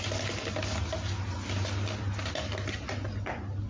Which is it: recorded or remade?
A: recorded